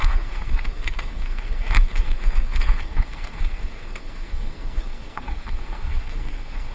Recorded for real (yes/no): no